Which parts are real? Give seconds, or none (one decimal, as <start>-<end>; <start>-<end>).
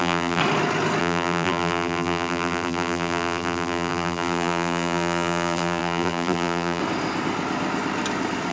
0.4-1.0; 6.8-8.5